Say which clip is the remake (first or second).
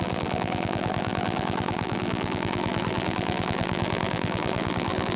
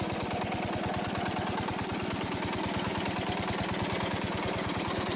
first